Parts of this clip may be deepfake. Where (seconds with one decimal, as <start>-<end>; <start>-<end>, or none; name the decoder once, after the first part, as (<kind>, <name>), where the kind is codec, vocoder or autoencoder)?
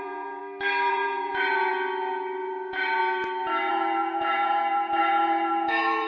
0.0-0.4 (vocoder, Vocos); 0.9-3.0; 3.7-6.1